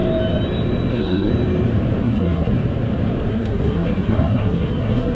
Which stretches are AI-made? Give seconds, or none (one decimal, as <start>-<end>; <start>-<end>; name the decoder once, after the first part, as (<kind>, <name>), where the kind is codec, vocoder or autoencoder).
0.9-1.3 (codec, SNAC); 2.0-2.6; 3.3-5.1